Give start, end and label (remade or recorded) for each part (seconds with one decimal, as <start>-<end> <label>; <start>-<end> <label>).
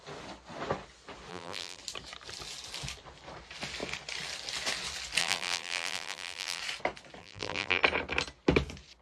0.0-1.3 recorded; 1.3-1.8 remade; 1.8-5.2 recorded; 5.2-6.6 remade; 6.6-7.2 recorded; 7.2-7.8 remade; 7.8-9.0 recorded